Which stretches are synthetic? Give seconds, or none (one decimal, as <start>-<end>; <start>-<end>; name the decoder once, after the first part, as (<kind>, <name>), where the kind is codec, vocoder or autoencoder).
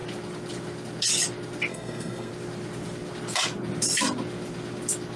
1.7-2.3 (codec, SNAC)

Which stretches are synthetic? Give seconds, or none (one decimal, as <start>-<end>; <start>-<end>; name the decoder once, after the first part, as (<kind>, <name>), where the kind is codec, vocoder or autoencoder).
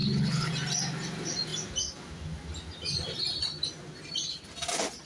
0.0-0.5 (codec, HILCodec)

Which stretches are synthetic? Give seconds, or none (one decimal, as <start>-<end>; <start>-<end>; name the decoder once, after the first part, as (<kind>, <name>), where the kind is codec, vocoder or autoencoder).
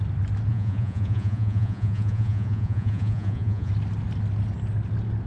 0.5-3.7 (vocoder, Vocos)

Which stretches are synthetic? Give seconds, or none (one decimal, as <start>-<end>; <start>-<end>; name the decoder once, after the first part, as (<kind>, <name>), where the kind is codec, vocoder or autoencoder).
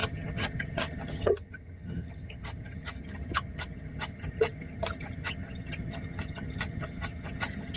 0.0-7.8 (vocoder, HiFi-GAN)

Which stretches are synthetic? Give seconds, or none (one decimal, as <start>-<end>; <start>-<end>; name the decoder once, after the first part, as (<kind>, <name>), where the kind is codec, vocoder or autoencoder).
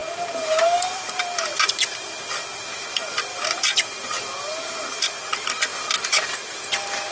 0.6-7.1 (vocoder, BigVGAN v2)